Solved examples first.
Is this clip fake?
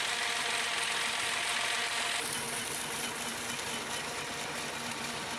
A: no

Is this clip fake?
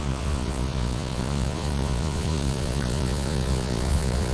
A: yes